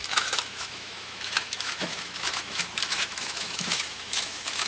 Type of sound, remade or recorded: remade